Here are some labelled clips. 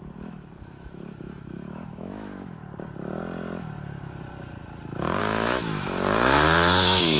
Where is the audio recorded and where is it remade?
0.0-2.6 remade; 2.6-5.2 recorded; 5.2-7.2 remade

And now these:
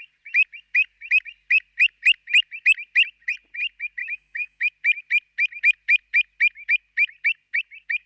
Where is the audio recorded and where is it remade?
0.0-4.0 recorded; 4.0-4.7 remade; 4.7-8.1 recorded

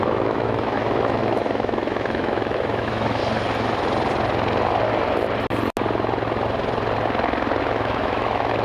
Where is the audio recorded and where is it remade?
0.0-3.2 remade; 3.2-7.6 recorded; 7.6-8.6 remade

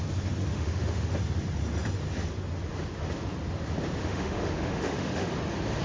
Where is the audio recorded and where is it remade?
0.0-0.5 recorded; 0.5-1.1 remade; 1.1-4.0 recorded; 4.0-5.3 remade; 5.3-5.8 recorded

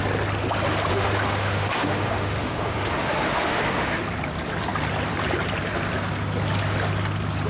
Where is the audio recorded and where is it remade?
0.0-0.9 recorded; 0.9-4.0 remade; 4.0-7.5 recorded

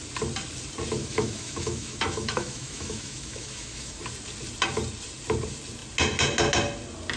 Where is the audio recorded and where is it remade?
0.0-1.0 recorded; 1.0-4.0 remade; 4.0-7.2 recorded

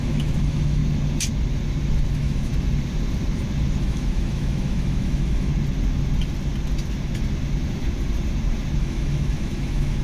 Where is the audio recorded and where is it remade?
0.0-0.8 remade; 0.8-2.1 recorded; 2.1-2.5 remade; 2.5-3.8 recorded; 3.8-5.5 remade; 5.5-8.8 recorded; 8.8-10.0 remade